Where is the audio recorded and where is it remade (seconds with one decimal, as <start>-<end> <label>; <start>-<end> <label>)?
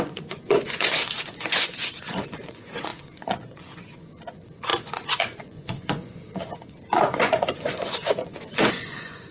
0.0-9.3 remade